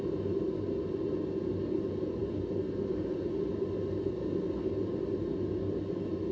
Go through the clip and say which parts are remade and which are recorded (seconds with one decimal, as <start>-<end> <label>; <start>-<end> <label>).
0.0-6.3 recorded